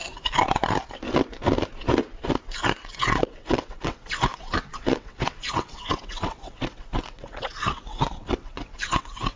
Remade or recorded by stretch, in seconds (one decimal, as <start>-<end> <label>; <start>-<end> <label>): 0.0-2.9 recorded; 2.9-9.4 remade